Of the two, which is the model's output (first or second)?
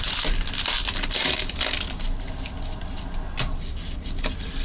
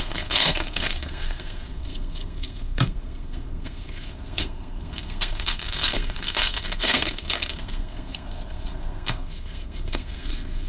second